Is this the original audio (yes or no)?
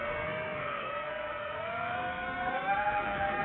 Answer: no